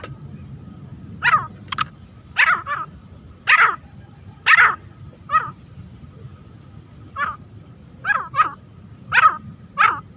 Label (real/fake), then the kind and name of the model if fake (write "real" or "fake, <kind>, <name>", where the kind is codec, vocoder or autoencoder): real